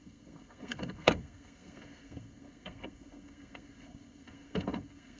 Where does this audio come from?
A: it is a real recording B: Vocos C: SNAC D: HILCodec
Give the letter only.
C